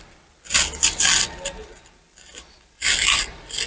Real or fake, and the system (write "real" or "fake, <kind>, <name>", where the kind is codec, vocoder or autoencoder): real